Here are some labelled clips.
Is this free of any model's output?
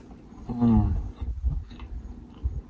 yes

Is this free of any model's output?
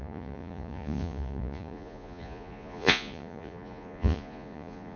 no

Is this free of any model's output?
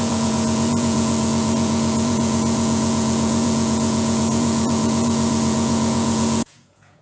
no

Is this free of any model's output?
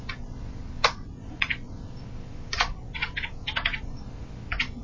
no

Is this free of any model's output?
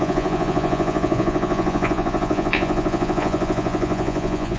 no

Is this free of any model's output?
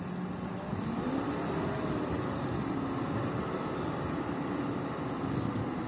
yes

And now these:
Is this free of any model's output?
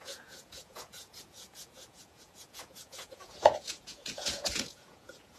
no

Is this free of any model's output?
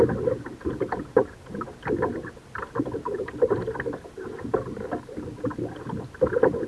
yes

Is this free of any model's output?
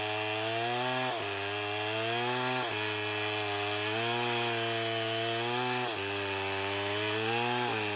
yes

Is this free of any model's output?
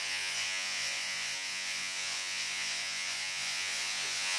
no